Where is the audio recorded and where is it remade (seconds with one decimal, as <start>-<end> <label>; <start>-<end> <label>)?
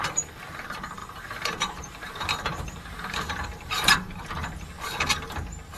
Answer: 0.0-1.0 recorded; 1.0-4.3 remade; 4.3-5.8 recorded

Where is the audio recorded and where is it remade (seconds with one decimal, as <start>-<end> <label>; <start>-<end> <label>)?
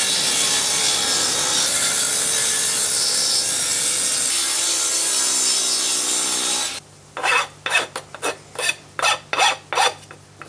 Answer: 0.0-10.5 recorded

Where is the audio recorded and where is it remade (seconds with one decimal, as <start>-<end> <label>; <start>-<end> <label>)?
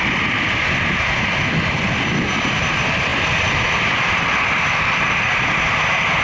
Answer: 0.0-3.1 recorded; 3.1-5.0 remade; 5.0-6.2 recorded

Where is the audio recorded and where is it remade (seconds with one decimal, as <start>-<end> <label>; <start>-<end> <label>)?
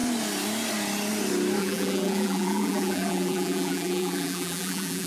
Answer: 0.0-1.6 recorded; 1.6-5.1 remade